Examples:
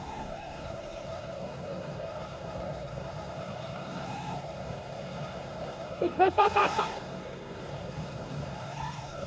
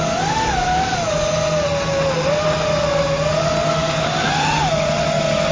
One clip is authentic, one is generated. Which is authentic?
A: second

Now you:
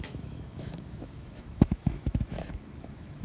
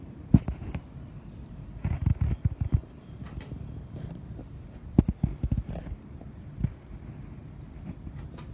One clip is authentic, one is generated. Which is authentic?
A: second